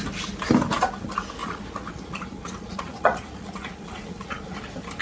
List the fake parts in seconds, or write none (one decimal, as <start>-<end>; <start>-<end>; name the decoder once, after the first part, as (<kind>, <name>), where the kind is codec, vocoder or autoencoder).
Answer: 1.4-4.4 (vocoder, Vocos)